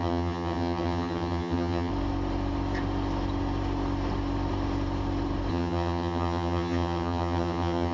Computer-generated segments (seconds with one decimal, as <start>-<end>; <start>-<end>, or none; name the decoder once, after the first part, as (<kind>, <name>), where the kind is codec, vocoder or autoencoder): 0.0-1.9 (vocoder, HiFi-GAN); 5.5-7.9